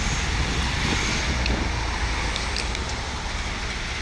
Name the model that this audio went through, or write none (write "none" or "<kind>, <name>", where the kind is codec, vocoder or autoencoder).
none